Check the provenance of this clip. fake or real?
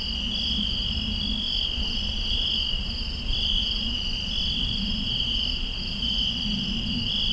real